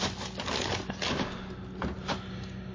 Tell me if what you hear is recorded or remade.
recorded